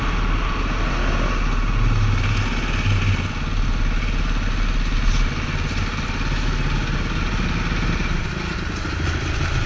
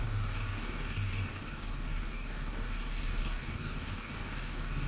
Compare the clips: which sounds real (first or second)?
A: first